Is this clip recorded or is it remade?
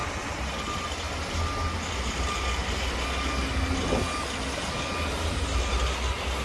recorded